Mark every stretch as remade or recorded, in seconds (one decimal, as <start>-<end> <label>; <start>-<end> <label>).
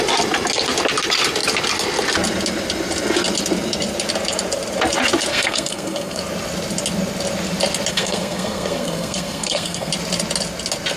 0.0-5.3 recorded; 5.3-6.2 remade; 6.2-7.9 recorded; 7.9-9.9 remade; 9.9-11.0 recorded